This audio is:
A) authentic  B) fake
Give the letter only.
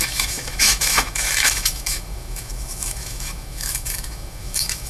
B